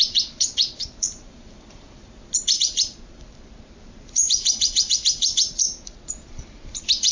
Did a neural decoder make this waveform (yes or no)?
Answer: yes